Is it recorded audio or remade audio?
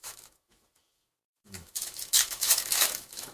remade